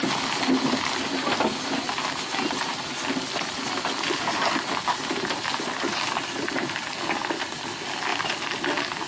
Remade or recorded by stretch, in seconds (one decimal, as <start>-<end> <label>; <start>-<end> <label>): 0.0-9.1 recorded

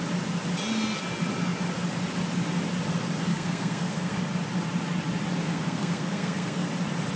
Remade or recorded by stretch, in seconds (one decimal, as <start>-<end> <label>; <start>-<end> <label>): 0.0-3.3 recorded; 3.3-4.2 remade; 4.2-5.4 recorded; 5.4-6.7 remade; 6.7-7.2 recorded

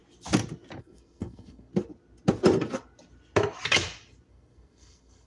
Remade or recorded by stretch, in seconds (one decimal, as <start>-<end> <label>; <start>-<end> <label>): 0.0-0.8 recorded; 0.8-1.7 remade; 1.7-4.3 recorded; 4.3-5.3 remade

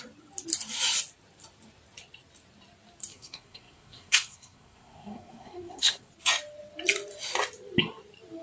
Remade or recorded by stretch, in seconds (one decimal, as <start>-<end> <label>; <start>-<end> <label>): 0.0-3.1 recorded; 3.1-6.1 remade; 6.1-8.4 recorded

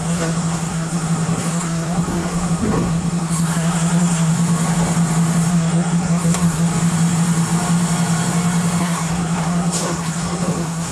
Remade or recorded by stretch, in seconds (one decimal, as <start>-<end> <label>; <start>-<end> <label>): 0.0-4.3 remade; 4.3-5.5 recorded; 5.5-6.7 remade; 6.7-8.8 recorded; 8.8-10.9 remade

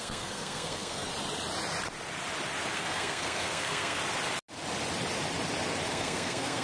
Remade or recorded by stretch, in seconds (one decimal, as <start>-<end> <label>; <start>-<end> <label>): 0.0-1.1 remade; 1.1-2.7 recorded; 2.7-4.0 remade; 4.0-5.9 recorded; 5.9-6.6 remade